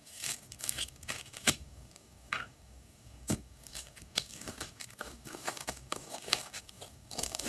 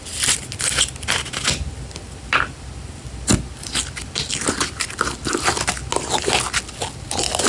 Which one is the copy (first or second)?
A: first